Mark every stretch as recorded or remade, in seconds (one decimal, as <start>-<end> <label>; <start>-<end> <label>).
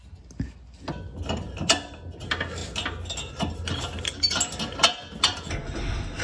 0.0-6.2 recorded